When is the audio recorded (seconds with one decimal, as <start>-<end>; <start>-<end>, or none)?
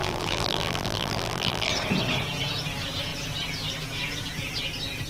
1.7-5.1